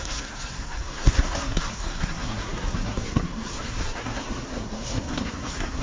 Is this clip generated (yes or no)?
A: yes